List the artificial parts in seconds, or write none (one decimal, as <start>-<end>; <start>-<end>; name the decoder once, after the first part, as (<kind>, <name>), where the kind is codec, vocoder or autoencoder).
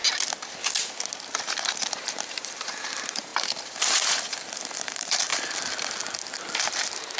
1.4-5.3 (vocoder, BigVGAN v2); 6.6-7.2